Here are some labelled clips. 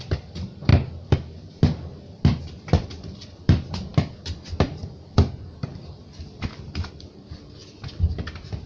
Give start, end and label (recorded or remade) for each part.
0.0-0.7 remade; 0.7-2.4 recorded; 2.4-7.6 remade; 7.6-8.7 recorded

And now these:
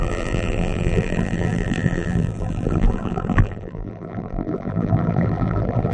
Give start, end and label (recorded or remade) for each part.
0.0-5.9 remade

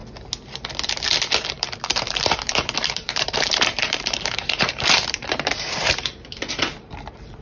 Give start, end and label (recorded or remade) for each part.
0.0-1.5 recorded; 1.5-7.4 remade

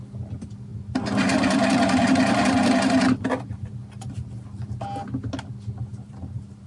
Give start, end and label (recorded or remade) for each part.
0.0-0.7 recorded; 0.7-4.7 remade; 4.7-5.9 recorded; 5.9-6.7 remade